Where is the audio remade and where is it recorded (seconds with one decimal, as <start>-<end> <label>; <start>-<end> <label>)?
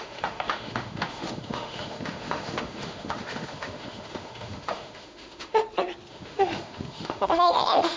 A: 0.0-5.6 remade; 5.6-6.1 recorded; 6.1-8.0 remade